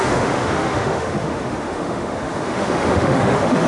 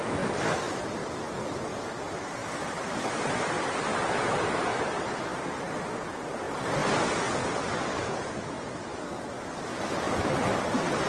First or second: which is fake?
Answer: first